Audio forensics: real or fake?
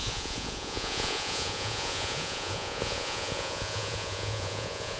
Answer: fake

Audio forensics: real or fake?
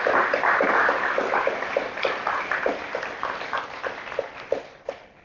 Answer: real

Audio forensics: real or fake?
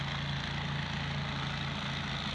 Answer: real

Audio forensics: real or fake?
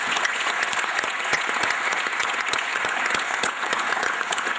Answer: fake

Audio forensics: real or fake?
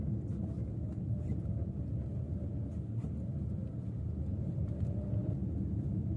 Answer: real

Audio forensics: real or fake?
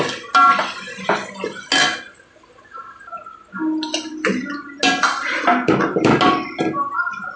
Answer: real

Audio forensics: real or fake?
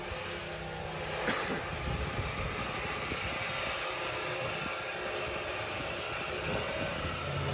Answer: real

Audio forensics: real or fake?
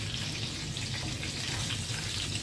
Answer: real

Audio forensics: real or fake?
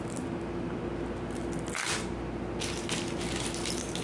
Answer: real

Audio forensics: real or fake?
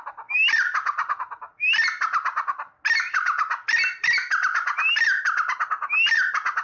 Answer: real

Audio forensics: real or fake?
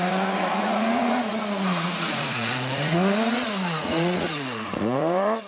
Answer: fake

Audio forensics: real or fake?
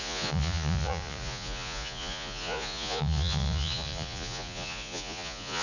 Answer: fake